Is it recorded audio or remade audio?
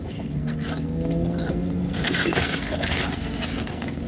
remade